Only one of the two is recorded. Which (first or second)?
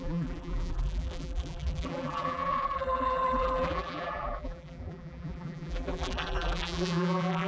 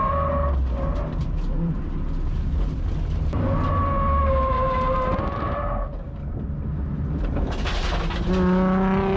second